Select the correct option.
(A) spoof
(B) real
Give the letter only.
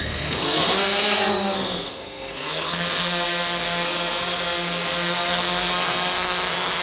A